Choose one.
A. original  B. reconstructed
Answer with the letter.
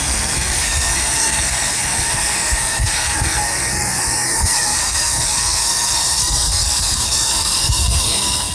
B